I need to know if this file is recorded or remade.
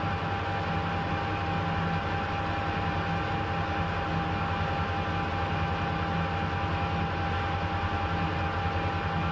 recorded